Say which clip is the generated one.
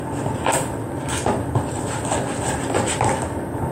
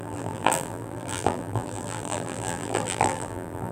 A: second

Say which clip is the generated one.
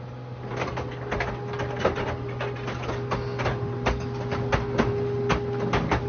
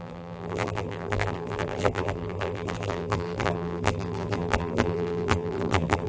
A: second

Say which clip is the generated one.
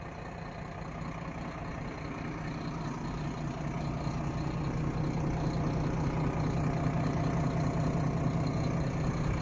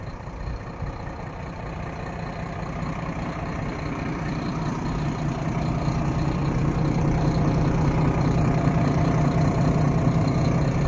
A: second